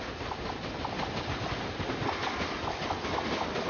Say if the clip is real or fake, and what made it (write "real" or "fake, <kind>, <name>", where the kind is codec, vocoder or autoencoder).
real